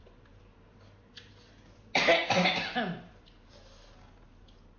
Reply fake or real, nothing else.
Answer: real